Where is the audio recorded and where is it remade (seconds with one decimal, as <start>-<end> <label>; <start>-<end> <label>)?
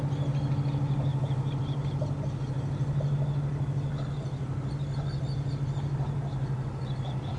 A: 0.0-7.4 recorded